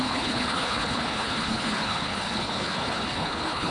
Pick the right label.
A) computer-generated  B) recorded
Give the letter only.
A